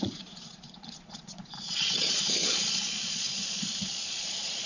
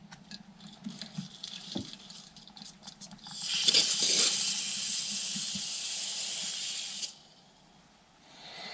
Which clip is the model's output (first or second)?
first